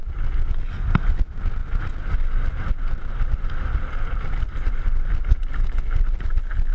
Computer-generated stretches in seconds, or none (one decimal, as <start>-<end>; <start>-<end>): none